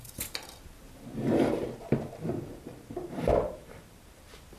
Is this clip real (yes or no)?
no